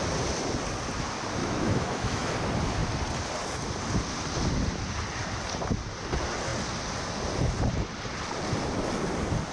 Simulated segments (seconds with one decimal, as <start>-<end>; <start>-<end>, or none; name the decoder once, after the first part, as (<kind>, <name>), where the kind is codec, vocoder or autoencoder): 1.4-2.3 (autoencoder, DAC-VAE)